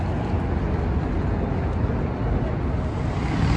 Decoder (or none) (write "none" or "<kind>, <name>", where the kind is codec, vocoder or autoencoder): none